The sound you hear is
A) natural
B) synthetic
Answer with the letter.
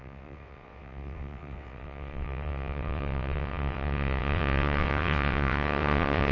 B